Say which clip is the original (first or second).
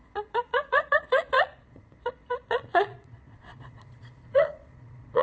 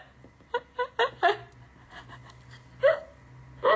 second